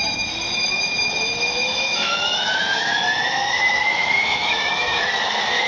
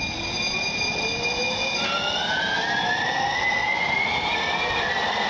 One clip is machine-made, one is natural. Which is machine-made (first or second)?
first